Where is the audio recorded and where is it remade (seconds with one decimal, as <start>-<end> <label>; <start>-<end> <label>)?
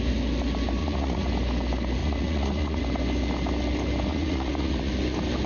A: 0.0-0.8 recorded; 0.8-1.3 remade; 1.3-2.0 recorded; 2.0-2.8 remade; 2.8-4.1 recorded; 4.1-4.9 remade; 4.9-5.5 recorded